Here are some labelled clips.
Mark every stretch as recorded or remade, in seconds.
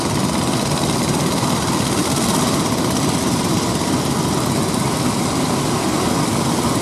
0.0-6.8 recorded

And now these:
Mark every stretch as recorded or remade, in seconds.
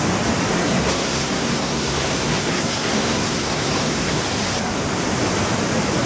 0.0-0.5 recorded; 0.5-4.2 remade; 4.2-6.1 recorded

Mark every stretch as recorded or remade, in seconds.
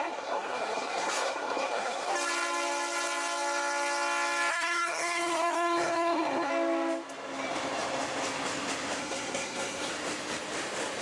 0.0-2.1 remade; 2.1-4.5 recorded; 4.5-6.5 remade; 6.5-9.0 recorded; 9.0-9.9 remade; 9.9-11.0 recorded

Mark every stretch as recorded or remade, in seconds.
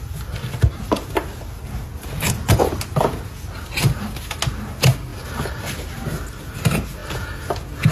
0.0-7.9 recorded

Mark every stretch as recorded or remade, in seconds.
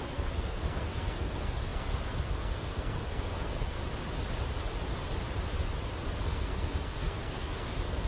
0.0-3.8 remade; 3.8-6.2 recorded; 6.2-8.1 remade